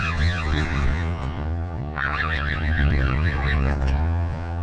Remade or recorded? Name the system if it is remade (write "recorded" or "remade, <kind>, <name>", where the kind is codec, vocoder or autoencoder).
remade, vocoder, Vocos